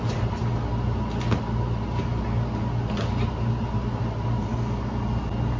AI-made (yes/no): no